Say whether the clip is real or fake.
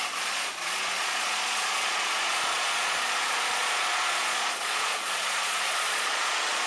fake